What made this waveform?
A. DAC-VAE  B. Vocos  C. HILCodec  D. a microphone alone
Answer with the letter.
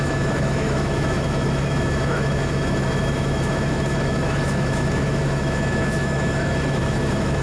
A